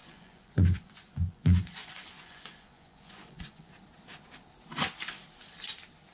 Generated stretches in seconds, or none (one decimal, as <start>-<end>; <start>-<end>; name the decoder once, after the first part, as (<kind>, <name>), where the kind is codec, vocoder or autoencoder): 0.0-3.7 (vocoder, Vocos)